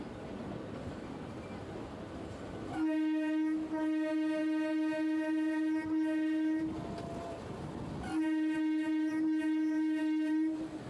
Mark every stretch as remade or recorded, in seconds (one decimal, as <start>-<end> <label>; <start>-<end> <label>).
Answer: 0.0-10.9 recorded